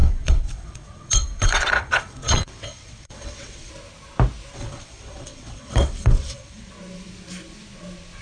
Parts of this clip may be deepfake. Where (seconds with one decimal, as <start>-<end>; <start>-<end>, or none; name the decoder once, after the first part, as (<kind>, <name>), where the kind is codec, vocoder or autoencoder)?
0.0-3.7 (vocoder, WaveNeXt); 4.5-6.7